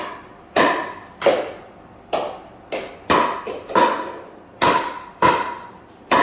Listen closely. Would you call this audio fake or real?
real